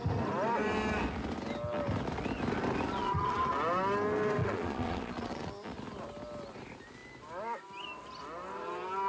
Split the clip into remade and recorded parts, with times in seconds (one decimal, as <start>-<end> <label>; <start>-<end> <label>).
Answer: 0.0-3.0 recorded; 3.0-3.5 remade; 3.5-4.4 recorded; 4.4-5.5 remade; 5.5-9.1 recorded